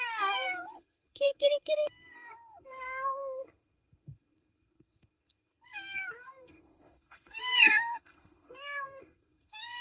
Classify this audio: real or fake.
fake